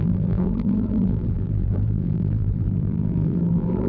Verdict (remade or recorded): remade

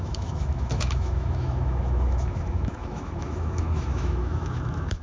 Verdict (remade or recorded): remade